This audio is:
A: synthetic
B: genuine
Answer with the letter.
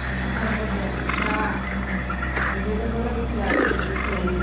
B